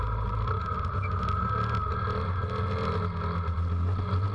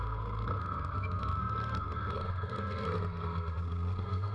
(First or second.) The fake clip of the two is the second